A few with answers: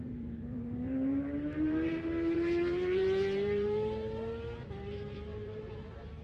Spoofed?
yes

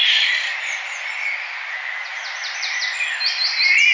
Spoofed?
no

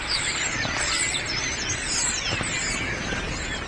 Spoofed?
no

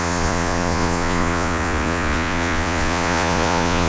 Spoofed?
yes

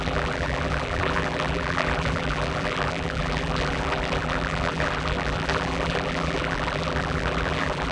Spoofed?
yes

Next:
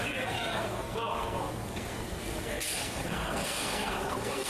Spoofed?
yes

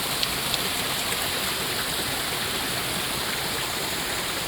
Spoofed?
no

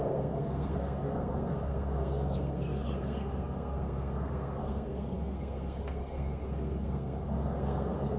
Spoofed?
yes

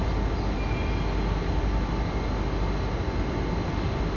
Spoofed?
no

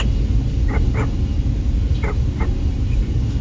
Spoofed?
no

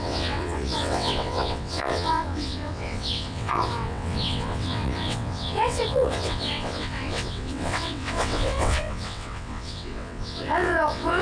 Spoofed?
yes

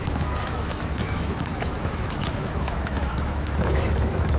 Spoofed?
yes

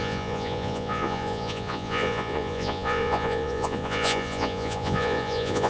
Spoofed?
yes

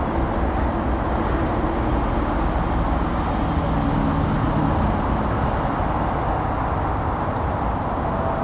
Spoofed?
no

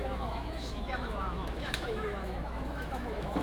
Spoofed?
yes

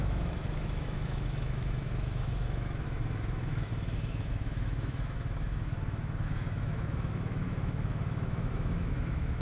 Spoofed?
yes